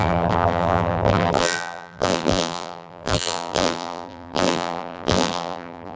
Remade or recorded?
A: remade